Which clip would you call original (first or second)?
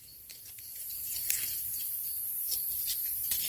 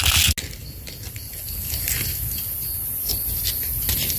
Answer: second